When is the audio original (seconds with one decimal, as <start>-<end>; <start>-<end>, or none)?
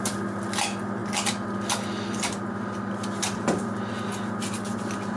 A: 0.0-5.2